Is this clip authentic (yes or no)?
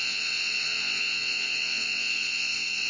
no